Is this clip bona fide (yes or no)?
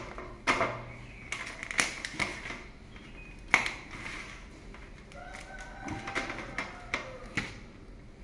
yes